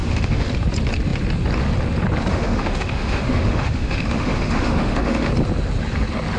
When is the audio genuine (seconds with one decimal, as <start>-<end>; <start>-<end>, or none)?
0.5-2.3; 5.3-6.4